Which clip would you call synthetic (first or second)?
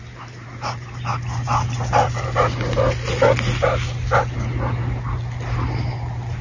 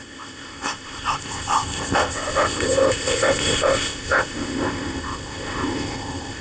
second